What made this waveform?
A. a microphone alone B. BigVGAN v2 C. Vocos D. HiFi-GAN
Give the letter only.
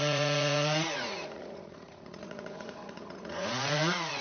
C